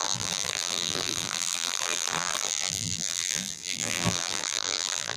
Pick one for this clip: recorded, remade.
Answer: remade